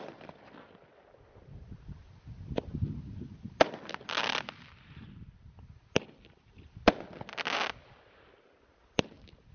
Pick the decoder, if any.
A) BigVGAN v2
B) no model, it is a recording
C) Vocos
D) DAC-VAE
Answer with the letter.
B